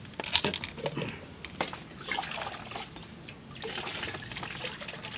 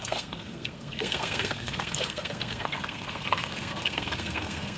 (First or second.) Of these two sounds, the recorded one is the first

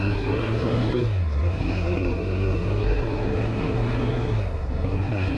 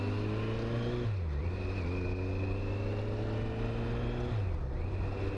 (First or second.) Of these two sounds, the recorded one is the second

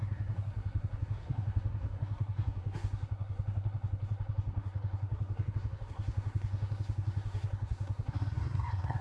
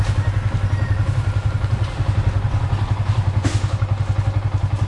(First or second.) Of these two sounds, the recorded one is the second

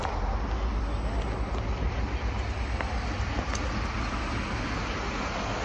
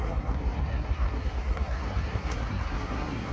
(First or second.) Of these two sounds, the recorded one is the first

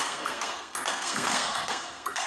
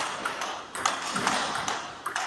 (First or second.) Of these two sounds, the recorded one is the second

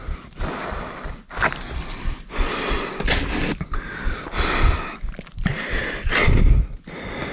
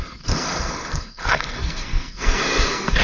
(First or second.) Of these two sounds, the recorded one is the first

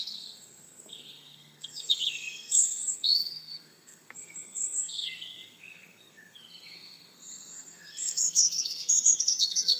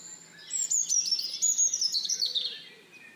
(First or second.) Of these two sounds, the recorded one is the second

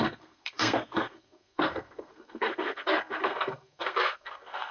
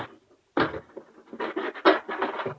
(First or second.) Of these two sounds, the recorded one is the second